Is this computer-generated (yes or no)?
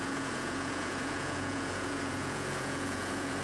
yes